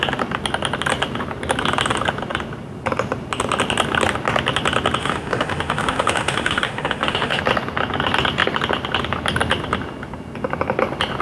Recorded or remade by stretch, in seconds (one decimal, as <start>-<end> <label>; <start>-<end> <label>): 0.0-5.0 recorded; 5.0-7.4 remade; 7.4-11.2 recorded